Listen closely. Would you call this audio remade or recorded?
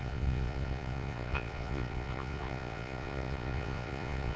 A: remade